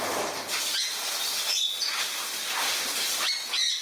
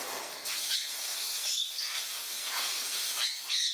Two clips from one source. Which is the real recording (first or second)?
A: first